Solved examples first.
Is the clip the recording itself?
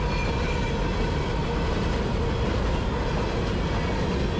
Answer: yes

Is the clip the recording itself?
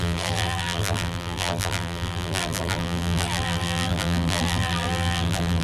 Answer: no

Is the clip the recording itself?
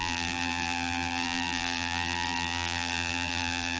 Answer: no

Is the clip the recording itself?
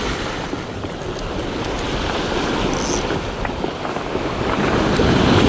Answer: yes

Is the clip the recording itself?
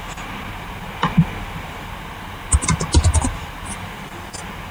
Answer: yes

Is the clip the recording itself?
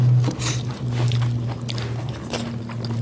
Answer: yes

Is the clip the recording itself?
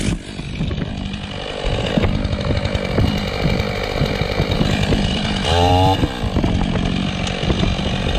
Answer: no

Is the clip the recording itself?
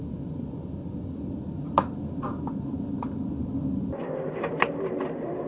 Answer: no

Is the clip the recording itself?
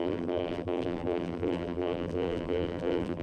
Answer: no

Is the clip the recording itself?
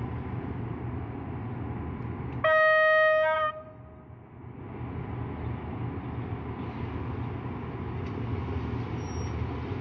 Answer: yes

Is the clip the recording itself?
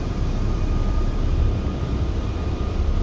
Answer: no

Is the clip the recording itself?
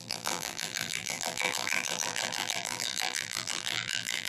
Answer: no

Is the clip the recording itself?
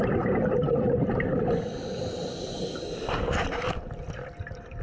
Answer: no